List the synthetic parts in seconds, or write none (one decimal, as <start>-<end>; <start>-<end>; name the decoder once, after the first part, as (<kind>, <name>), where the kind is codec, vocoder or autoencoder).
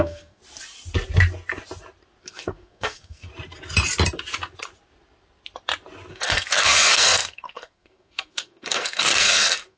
0.0-0.4 (codec, SNAC); 2.2-3.3; 6.1-9.8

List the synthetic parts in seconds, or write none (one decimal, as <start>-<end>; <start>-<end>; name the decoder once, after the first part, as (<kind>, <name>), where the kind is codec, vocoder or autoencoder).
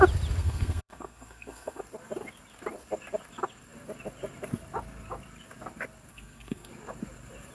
0.4-1.8 (codec, SNAC); 6.1-6.7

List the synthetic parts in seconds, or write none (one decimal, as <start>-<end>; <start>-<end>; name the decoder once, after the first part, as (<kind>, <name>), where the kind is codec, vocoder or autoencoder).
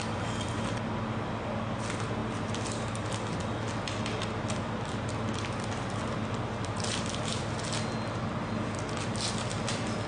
none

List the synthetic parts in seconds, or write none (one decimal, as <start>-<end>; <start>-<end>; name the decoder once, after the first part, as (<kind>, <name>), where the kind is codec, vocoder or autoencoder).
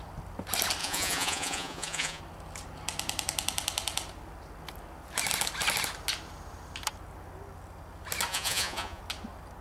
0.8-2.2 (vocoder, Vocos); 8.3-9.0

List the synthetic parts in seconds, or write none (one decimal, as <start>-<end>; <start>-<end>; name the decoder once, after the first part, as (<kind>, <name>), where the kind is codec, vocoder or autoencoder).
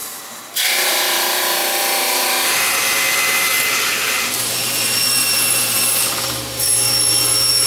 0.0-7.7 (vocoder, BigVGAN v2)